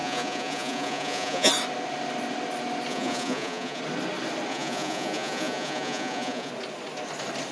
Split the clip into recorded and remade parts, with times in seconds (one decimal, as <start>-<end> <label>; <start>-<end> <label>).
0.0-1.5 remade; 1.5-2.9 recorded; 2.9-3.8 remade; 3.8-4.5 recorded; 4.5-6.5 remade; 6.5-7.5 recorded

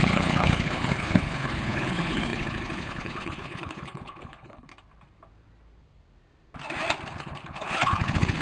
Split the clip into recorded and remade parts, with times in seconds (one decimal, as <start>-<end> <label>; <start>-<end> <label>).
0.0-4.7 remade; 4.7-7.1 recorded; 7.1-8.4 remade

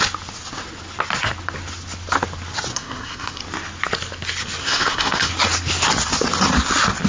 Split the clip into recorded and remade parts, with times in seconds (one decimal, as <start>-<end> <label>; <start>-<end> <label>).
0.0-2.7 recorded; 2.7-3.4 remade; 3.4-4.6 recorded; 4.6-5.3 remade; 5.3-7.1 recorded

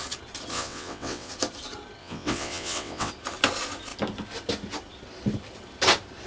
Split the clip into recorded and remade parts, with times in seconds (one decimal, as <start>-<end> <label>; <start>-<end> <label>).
0.0-0.5 recorded; 0.5-1.3 remade; 1.3-2.0 recorded; 2.0-3.1 remade; 3.1-6.3 recorded

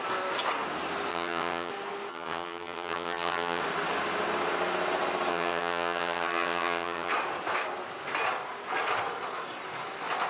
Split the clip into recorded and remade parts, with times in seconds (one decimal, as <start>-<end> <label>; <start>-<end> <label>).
0.0-1.1 recorded; 1.1-1.7 remade; 1.7-2.1 recorded; 2.1-3.6 remade; 3.6-5.3 recorded; 5.3-7.1 remade; 7.1-10.3 recorded

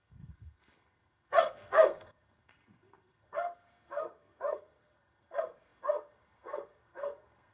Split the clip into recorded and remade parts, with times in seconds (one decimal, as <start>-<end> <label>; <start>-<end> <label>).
0.0-7.5 remade